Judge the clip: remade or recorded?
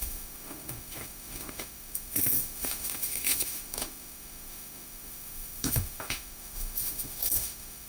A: remade